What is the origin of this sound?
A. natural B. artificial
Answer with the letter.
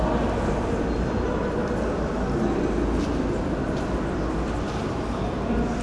A